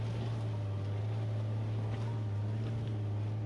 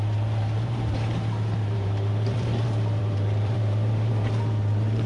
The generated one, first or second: second